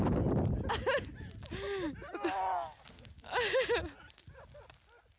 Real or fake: real